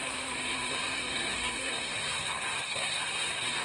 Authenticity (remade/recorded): remade